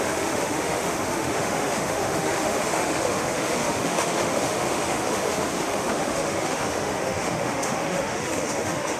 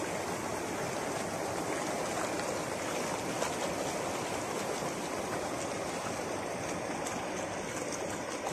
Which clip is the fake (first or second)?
first